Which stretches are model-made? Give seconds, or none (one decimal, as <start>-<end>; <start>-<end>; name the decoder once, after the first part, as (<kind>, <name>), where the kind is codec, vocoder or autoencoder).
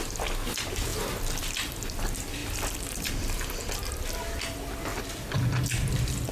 none